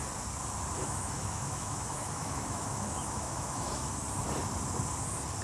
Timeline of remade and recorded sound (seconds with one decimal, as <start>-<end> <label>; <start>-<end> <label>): 0.0-0.8 recorded; 0.8-4.0 remade; 4.0-5.4 recorded